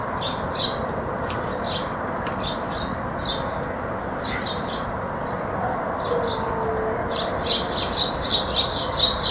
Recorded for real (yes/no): yes